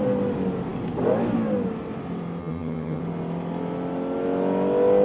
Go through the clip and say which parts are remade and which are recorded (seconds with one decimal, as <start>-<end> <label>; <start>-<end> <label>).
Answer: 0.0-2.4 recorded; 2.4-3.0 remade; 3.0-5.0 recorded